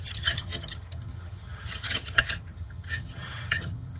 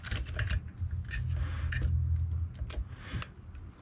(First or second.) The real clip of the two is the second